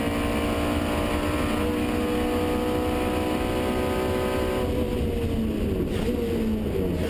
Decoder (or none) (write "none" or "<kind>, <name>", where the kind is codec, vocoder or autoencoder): none